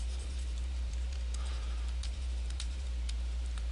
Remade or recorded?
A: remade